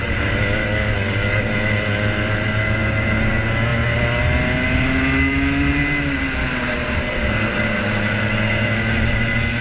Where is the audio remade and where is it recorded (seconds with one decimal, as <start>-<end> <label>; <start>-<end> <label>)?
0.0-0.6 recorded; 0.6-1.4 remade; 1.4-9.6 recorded